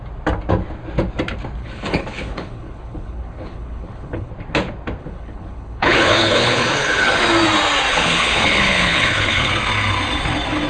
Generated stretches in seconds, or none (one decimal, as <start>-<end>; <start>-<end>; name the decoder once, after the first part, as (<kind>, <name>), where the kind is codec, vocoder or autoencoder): 1.6-4.3 (codec, HILCodec); 5.0-7.2; 7.9-9.5

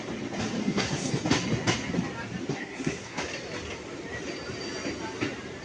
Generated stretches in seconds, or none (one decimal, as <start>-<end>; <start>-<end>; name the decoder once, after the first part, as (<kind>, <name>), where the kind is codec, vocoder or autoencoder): 0.6-1.1 (codec, SNAC); 2.5-3.2

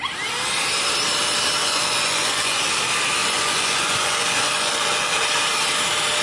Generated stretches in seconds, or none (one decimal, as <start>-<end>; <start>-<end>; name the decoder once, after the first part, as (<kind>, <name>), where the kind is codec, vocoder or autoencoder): 1.6-2.7 (vocoder, Vocos); 3.2-5.1

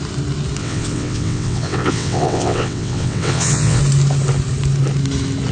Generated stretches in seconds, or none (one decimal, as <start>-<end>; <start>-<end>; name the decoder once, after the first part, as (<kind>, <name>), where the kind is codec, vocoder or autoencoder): 0.6-3.8 (vocoder, WaveNeXt)

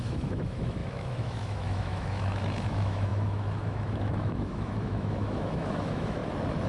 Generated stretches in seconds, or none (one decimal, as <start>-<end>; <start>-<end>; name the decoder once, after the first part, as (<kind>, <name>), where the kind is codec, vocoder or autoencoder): 0.0-6.2 (autoencoder, DAC-VAE)

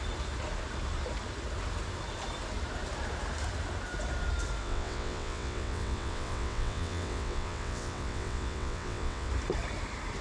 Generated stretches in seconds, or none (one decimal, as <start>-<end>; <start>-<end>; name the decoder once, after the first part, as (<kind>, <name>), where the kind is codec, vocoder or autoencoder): 4.6-9.3 (vocoder, WaveNeXt)

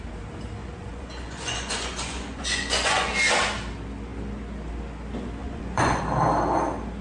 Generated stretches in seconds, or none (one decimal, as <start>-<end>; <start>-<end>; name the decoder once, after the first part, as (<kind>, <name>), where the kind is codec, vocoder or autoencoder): 0.6-3.1 (vocoder, Vocos); 5.4-6.0

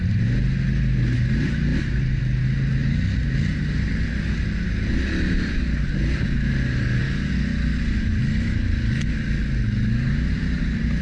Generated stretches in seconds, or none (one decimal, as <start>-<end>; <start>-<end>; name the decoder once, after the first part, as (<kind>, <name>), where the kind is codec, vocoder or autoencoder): none